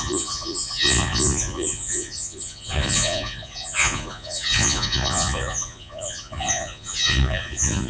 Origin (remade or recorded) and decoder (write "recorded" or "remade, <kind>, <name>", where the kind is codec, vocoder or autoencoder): remade, vocoder, Vocos